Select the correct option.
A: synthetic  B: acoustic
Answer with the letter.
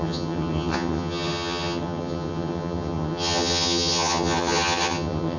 A